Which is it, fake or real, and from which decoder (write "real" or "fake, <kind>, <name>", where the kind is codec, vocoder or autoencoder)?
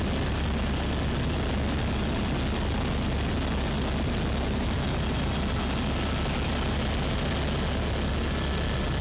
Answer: real